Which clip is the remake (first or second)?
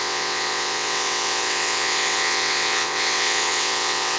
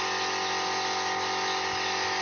first